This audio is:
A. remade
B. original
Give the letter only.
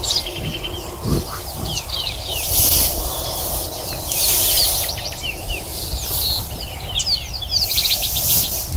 B